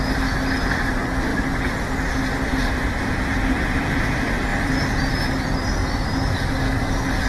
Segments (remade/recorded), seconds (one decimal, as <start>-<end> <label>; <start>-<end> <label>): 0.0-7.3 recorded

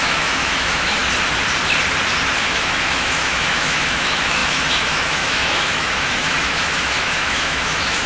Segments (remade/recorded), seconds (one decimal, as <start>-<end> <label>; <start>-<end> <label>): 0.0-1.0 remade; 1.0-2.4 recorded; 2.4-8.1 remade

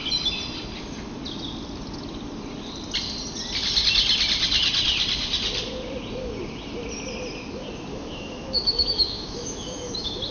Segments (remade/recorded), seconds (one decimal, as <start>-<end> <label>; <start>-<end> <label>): 0.0-7.9 recorded; 7.9-10.3 remade